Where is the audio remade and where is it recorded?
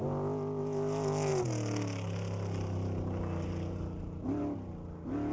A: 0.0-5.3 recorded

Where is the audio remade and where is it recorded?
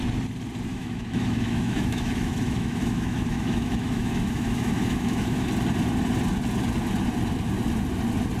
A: 0.0-0.7 recorded; 0.7-5.5 remade; 5.5-8.4 recorded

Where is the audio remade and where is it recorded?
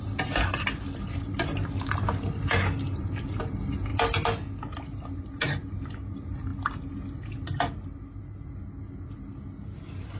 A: 0.0-10.2 recorded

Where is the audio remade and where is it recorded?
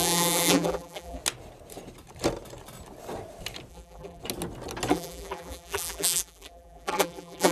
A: 0.0-1.2 remade; 1.2-3.7 recorded; 3.7-4.2 remade; 4.2-4.9 recorded; 4.9-7.5 remade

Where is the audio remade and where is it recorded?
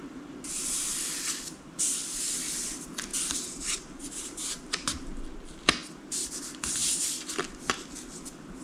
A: 0.0-3.1 recorded; 3.1-5.2 remade; 5.2-8.6 recorded